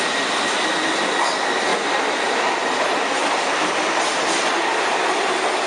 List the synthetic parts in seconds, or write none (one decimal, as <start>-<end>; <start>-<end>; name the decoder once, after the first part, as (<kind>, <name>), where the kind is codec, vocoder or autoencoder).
none